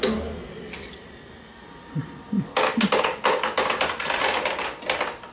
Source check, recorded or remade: recorded